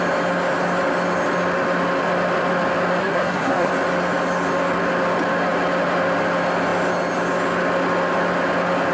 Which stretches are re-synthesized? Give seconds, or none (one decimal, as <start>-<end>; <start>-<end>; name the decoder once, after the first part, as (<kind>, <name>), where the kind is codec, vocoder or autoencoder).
3.0-3.7 (codec, SNAC)